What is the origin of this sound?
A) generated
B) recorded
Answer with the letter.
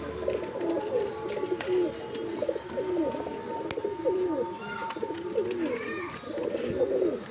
B